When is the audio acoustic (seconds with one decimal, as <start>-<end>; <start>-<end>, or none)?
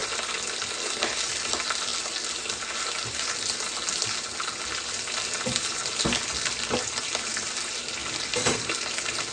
0.0-9.3